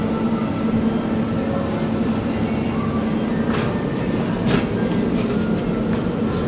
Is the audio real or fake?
real